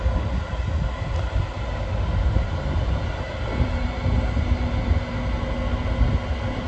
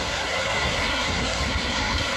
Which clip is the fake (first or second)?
second